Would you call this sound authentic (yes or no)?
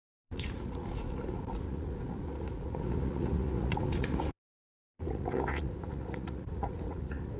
no